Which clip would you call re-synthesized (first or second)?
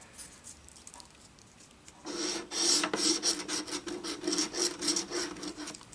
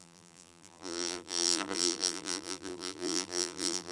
second